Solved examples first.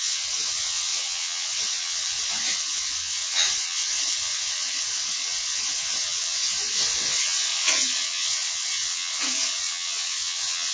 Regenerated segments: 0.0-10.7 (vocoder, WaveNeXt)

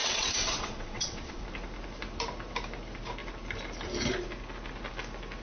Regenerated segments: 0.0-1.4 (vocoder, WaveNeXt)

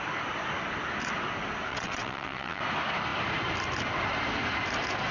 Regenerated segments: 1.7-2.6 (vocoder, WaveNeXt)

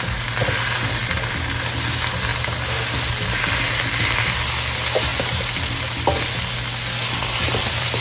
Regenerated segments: none

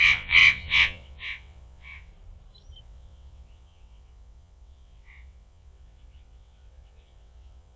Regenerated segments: 0.0-2.1 (vocoder, WaveNeXt); 2.8-7.8

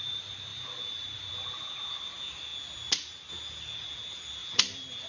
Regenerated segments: none

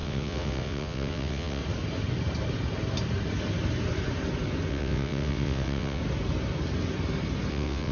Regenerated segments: 0.0-1.6 (vocoder, WaveNeXt); 4.7-6.0; 7.5-7.9